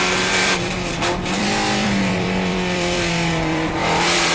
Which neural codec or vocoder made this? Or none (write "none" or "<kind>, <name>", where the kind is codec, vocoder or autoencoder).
vocoder, BigVGAN v2